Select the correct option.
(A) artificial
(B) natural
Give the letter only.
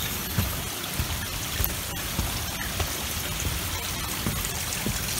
B